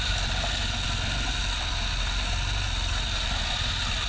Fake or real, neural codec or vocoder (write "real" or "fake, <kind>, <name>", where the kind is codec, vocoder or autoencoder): real